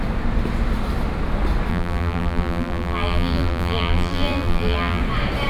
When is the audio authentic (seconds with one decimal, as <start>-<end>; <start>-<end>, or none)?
0.0-1.7; 5.0-5.5